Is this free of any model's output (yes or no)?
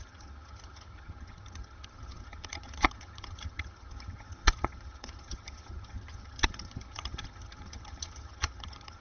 no